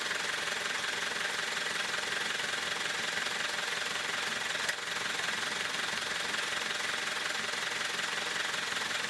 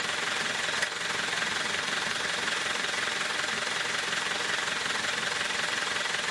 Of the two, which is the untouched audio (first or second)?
first